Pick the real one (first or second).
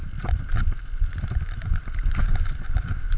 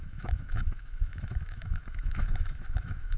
first